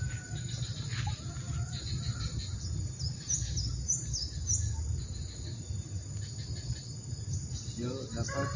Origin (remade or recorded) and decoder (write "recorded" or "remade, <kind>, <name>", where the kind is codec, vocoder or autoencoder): recorded